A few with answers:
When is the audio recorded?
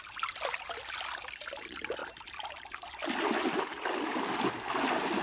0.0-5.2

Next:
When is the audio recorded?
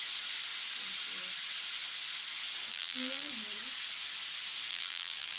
0.0-2.7; 3.3-4.7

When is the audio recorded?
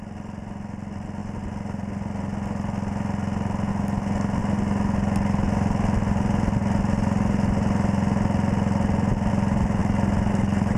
0.0-10.8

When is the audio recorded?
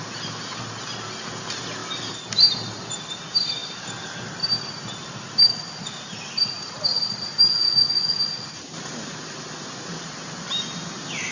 0.0-11.3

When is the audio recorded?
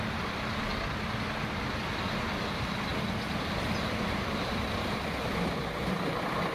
0.7-1.9; 2.9-3.8; 5.2-5.8